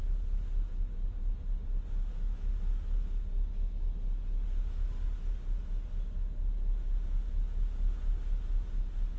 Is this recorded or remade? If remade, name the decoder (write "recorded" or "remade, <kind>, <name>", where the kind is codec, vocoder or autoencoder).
recorded